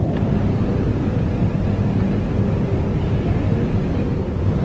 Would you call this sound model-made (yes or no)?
no